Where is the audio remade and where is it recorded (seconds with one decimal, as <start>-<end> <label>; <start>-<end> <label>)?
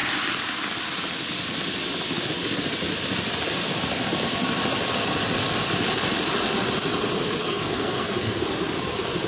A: 0.0-7.4 recorded; 7.4-8.4 remade; 8.4-9.3 recorded